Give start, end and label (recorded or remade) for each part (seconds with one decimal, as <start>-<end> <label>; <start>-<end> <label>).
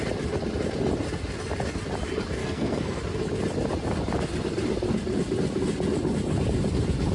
0.0-2.4 recorded; 2.4-3.0 remade; 3.0-7.1 recorded